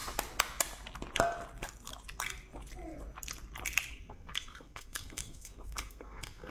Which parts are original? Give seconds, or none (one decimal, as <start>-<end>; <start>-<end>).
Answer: 0.0-3.9